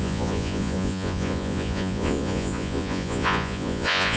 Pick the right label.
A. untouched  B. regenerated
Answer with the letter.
B